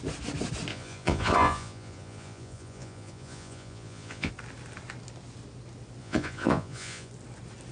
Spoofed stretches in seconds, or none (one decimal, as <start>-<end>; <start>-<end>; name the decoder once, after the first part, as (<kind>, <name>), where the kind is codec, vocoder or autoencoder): 0.7-4.3 (vocoder, Vocos); 6.0-7.1